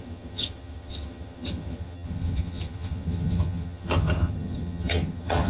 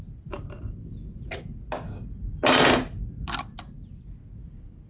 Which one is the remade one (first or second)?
first